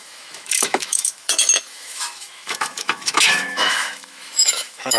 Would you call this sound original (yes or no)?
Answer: no